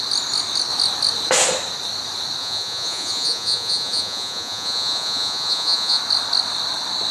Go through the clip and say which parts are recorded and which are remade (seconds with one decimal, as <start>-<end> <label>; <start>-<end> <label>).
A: 0.0-2.4 recorded; 2.4-6.0 remade; 6.0-7.1 recorded

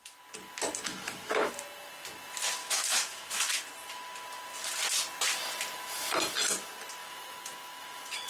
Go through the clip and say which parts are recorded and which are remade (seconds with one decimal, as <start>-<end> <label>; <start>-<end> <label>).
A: 0.0-0.9 recorded; 0.9-1.5 remade; 1.5-2.6 recorded; 2.6-3.6 remade; 3.6-7.0 recorded; 7.0-8.3 remade

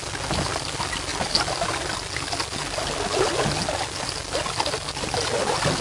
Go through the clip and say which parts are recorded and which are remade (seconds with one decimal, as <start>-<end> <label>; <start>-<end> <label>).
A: 0.0-5.8 recorded